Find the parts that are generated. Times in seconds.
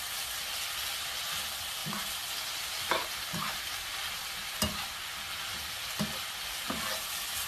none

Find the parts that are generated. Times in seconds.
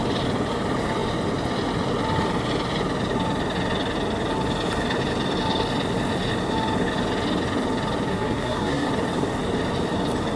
8.1-8.9 (codec, SNAC)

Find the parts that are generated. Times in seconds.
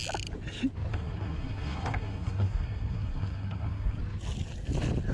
0.9-4.0 (codec, SNAC)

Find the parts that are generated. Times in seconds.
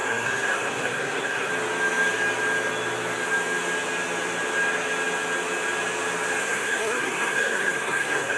0.0-1.5 (codec, SNAC); 6.4-8.4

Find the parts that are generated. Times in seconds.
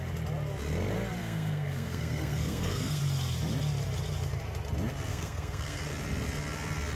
1.2-3.0 (codec, SNAC); 5.1-5.8